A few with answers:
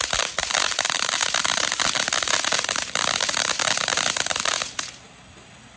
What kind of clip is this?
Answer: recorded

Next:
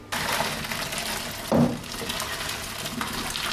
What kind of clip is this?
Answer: recorded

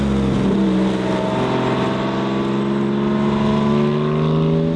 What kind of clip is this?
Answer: recorded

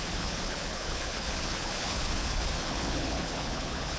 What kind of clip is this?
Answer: remade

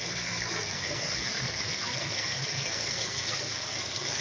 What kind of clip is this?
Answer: remade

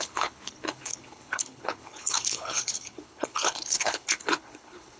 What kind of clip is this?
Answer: remade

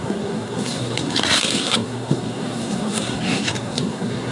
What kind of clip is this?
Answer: remade